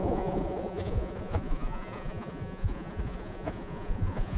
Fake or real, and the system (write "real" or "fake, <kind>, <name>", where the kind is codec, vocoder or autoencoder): fake, vocoder, Vocos